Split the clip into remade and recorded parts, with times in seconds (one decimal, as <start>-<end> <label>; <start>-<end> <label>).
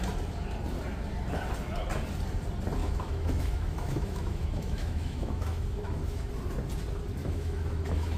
0.0-2.8 recorded; 2.8-6.3 remade; 6.3-7.2 recorded; 7.2-8.2 remade